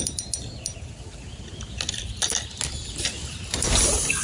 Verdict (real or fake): real